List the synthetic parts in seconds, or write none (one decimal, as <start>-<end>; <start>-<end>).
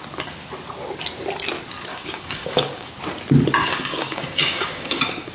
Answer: 1.9-2.9; 3.6-5.3